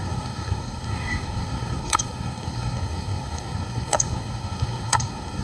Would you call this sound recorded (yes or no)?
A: no